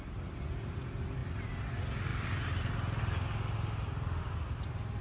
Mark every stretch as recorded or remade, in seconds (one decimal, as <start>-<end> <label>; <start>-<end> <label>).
0.0-5.0 recorded